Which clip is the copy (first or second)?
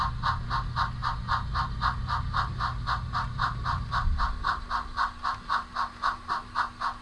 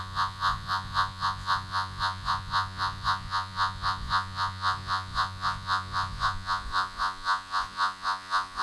second